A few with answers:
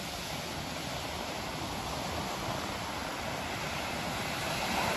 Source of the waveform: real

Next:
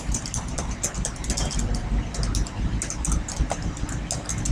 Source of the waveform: real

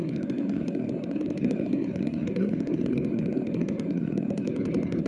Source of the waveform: fake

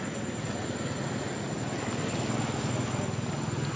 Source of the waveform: real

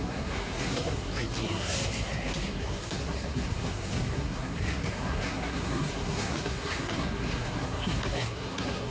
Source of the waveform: fake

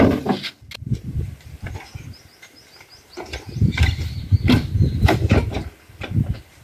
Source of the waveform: real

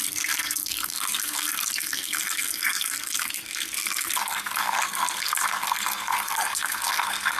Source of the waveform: fake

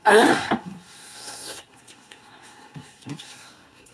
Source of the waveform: fake